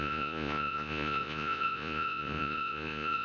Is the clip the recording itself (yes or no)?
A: no